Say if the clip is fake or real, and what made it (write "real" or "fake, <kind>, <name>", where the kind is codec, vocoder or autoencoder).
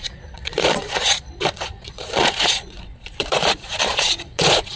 fake, vocoder, Vocos